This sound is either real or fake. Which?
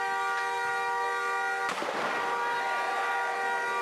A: real